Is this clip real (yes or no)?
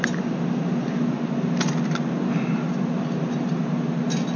yes